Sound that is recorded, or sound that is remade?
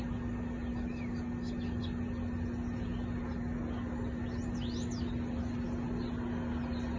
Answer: recorded